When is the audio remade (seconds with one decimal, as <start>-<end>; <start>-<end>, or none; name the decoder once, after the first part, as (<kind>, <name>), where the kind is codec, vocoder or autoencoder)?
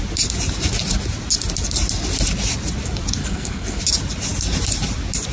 3.2-3.8 (codec, SNAC)